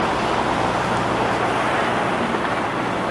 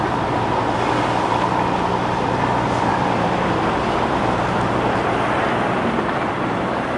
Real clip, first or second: first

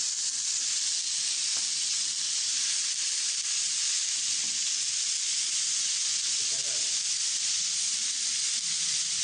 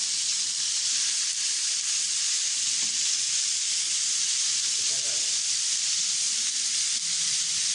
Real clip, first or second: first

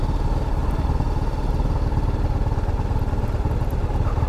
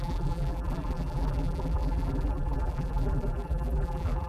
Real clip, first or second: first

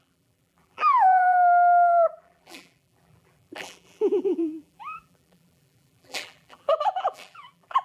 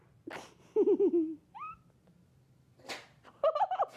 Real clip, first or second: second